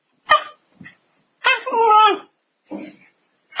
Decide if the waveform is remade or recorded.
recorded